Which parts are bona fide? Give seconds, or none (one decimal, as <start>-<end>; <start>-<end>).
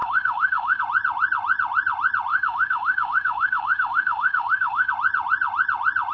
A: 0.8-2.3; 4.9-6.1